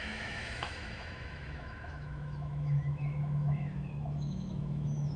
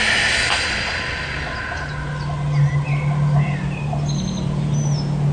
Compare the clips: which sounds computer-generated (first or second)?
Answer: first